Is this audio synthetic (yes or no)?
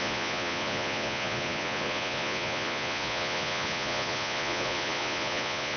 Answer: yes